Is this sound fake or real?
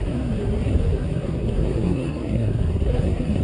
fake